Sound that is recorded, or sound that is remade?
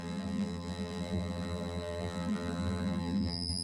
remade